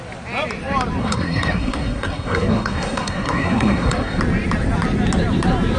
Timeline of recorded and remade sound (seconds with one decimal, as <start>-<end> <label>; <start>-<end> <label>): 0.0-1.0 recorded; 1.0-4.2 remade; 4.2-5.8 recorded